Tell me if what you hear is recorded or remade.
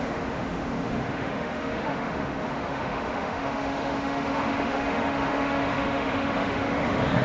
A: remade